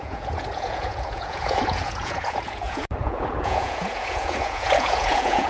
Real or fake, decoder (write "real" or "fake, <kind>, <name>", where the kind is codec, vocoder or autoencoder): fake, vocoder, Vocos